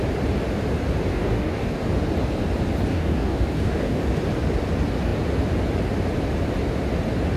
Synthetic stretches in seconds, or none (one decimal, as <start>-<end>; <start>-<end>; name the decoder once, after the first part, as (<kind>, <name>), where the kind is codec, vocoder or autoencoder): 1.1-1.8 (codec, DAC); 2.9-4.0